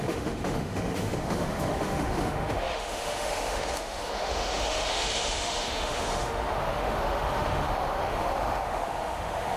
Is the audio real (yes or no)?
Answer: no